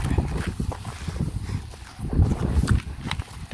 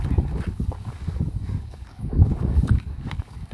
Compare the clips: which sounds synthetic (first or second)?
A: second